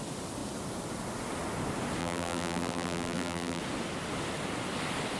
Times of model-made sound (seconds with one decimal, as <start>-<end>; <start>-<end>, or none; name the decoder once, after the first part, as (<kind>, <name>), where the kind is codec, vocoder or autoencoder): 2.0-3.6 (vocoder, BigVGAN v2)